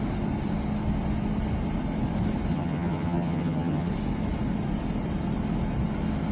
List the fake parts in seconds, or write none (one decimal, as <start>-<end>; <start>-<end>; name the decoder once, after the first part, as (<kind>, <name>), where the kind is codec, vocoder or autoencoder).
2.5-3.9 (vocoder, HiFi-GAN)

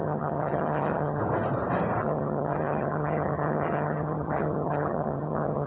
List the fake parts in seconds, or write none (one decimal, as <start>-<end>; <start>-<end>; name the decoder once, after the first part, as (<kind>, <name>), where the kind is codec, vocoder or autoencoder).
0.0-1.2 (vocoder, HiFi-GAN); 2.0-5.7

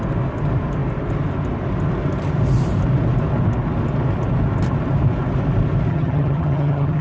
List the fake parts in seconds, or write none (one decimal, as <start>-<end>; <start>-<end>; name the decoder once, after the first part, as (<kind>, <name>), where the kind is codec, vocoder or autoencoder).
5.9-7.0 (vocoder, HiFi-GAN)

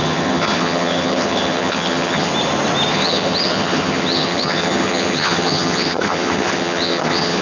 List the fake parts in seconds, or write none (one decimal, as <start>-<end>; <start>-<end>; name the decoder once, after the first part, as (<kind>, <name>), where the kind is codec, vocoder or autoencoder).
0.0-2.3 (vocoder, HiFi-GAN); 2.9-7.4